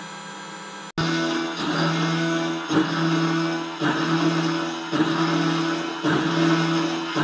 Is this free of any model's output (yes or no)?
yes